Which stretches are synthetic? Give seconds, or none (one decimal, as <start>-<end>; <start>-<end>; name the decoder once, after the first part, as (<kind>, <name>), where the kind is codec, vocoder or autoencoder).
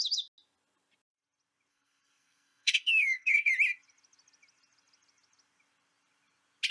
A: 1.7-3.5 (codec, SNAC)